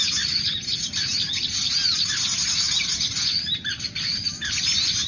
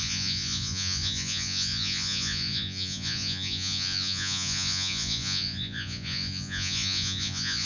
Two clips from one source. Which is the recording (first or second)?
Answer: first